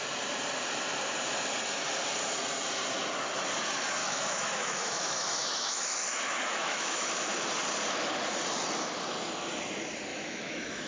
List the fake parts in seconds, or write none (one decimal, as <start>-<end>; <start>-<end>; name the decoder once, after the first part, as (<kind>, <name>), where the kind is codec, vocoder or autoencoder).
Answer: 4.0-7.3 (autoencoder, DAC-VAE); 10.1-10.9